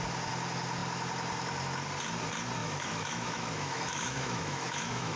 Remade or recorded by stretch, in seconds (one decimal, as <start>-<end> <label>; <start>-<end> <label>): 0.0-2.6 recorded; 2.6-5.2 remade